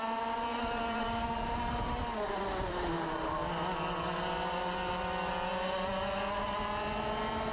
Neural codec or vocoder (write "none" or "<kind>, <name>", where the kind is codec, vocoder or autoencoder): none